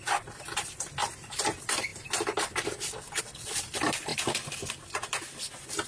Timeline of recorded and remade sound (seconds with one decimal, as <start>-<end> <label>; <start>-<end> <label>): 0.0-4.1 remade; 4.1-4.7 recorded; 4.7-5.9 remade